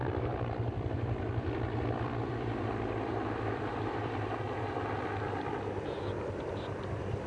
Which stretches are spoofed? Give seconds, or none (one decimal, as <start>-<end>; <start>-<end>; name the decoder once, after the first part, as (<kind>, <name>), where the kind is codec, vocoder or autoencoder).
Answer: 0.0-7.3 (vocoder, BigVGAN v2)